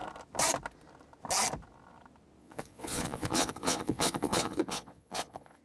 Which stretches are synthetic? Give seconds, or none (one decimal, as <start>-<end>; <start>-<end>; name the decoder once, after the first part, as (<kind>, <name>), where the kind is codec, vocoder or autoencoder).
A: 2.4-5.6 (vocoder, Vocos)